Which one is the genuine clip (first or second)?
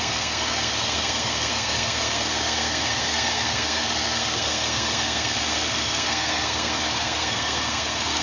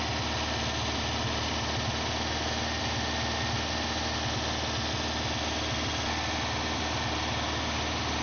second